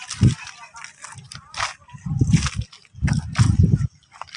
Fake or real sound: real